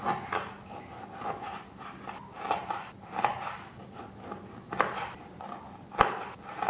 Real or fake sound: real